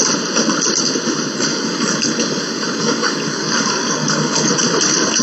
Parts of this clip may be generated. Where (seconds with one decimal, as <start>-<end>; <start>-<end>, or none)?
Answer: 1.5-4.6